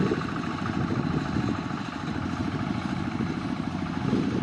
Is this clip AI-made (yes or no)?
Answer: no